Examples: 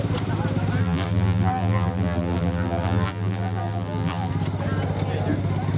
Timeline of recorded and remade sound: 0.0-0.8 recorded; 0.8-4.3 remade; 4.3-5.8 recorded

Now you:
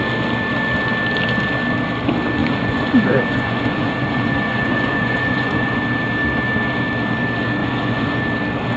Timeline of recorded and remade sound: 0.0-2.4 recorded; 2.4-5.8 remade; 5.8-7.6 recorded; 7.6-8.2 remade; 8.2-8.8 recorded

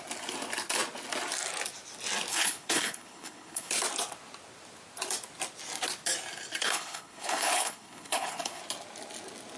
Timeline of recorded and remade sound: 0.0-2.3 recorded; 2.3-3.7 remade; 3.7-6.6 recorded; 6.6-8.6 remade; 8.6-9.6 recorded